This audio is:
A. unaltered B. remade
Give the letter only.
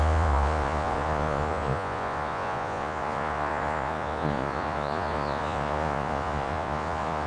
B